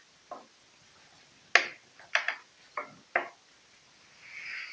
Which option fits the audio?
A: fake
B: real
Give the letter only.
B